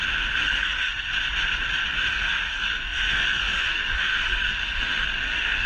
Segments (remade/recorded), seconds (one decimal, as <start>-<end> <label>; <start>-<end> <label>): 0.0-0.4 recorded; 0.4-1.1 remade; 1.1-2.1 recorded; 2.1-5.7 remade